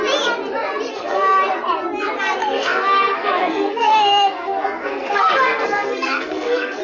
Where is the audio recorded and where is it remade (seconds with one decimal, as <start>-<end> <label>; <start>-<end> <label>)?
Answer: 0.0-0.9 recorded; 0.9-1.4 remade; 1.4-2.4 recorded; 2.4-6.8 remade